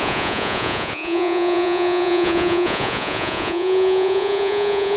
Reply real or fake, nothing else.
fake